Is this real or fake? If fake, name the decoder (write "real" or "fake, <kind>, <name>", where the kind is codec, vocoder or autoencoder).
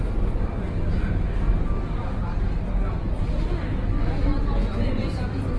real